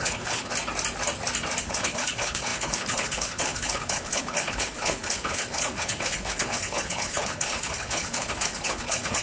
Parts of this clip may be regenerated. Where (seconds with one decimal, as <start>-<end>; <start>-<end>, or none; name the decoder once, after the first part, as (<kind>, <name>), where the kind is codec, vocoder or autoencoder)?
0.0-0.5 (codec, HILCodec); 1.6-9.2

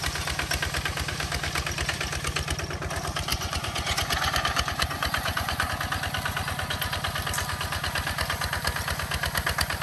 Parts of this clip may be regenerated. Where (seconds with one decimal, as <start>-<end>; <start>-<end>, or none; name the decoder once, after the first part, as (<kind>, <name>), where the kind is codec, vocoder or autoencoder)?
3.3-5.7 (vocoder, Vocos)

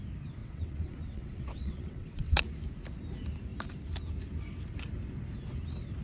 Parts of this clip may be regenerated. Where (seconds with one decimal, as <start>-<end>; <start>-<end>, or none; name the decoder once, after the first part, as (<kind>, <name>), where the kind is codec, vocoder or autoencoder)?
0.4-2.5 (vocoder, WaveNeXt)

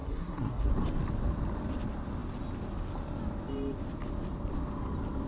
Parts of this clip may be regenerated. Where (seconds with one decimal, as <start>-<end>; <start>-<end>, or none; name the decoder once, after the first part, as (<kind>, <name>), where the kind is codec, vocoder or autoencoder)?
0.0-0.7 (codec, SNAC)

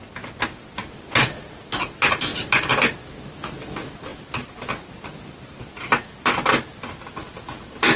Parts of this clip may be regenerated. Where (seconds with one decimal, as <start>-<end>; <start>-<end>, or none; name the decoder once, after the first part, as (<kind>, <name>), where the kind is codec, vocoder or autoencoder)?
none

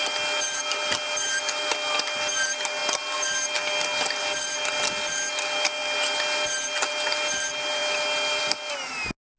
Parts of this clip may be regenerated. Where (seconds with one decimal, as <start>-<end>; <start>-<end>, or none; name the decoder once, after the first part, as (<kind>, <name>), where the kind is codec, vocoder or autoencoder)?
none

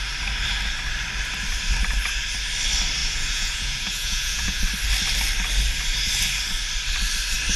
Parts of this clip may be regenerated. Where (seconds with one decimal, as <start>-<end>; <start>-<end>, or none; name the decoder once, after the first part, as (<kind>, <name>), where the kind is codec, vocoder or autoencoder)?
3.0-4.6 (vocoder, Vocos)